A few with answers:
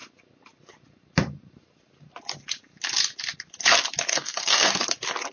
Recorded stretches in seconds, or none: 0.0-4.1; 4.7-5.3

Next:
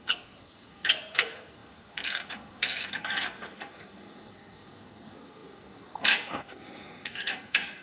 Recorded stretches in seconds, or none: none

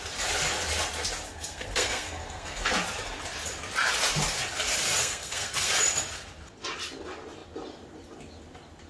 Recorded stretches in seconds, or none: 0.0-1.3; 2.7-5.0; 5.7-8.9

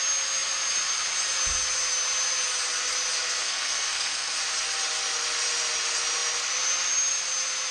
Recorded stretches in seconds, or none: 0.0-3.4; 4.3-7.7

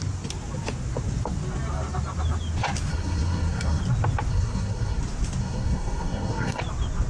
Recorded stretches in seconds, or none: 0.0-2.9; 3.8-4.3; 5.0-5.4; 6.6-7.1

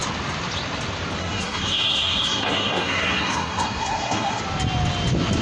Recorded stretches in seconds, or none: 0.0-1.2; 4.4-5.4

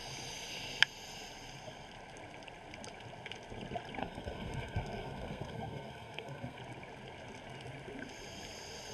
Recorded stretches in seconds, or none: 0.0-4.0; 6.6-8.9

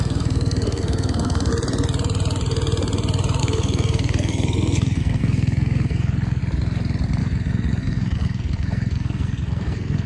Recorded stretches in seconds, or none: 1.5-3.4; 6.4-7.2